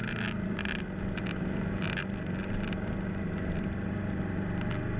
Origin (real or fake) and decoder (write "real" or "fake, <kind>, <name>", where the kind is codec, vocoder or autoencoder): real